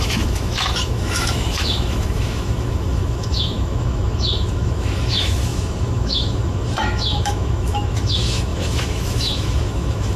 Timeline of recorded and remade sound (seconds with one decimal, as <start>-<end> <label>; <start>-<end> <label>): 0.0-10.2 remade